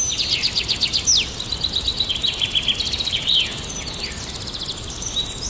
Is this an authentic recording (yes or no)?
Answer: yes